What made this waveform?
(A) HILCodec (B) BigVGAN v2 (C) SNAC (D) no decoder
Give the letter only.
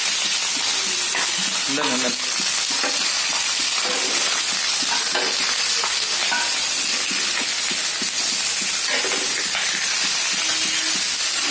D